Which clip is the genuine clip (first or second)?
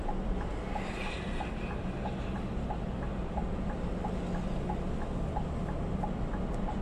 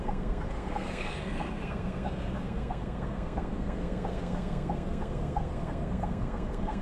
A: first